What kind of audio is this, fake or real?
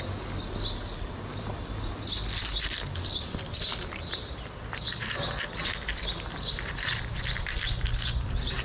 real